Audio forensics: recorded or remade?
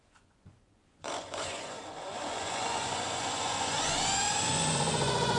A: remade